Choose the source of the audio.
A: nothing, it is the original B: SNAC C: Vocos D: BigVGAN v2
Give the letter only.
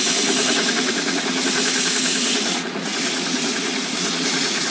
C